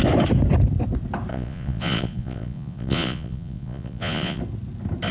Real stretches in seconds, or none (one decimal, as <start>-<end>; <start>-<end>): 0.0-1.3; 4.4-5.1